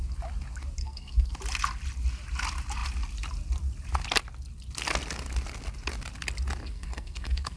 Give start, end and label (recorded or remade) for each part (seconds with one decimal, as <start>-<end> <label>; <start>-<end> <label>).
0.0-0.8 recorded; 0.8-1.3 remade; 1.3-6.6 recorded; 6.6-7.6 remade